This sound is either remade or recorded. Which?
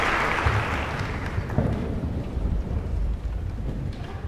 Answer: remade